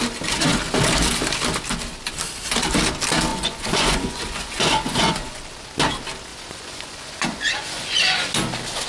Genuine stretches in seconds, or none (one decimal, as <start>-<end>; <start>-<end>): 0.0-3.3; 5.4-6.3; 8.3-8.9